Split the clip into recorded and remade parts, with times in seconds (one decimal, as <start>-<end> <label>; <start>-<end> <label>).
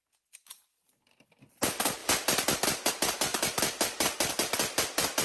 0.0-5.2 recorded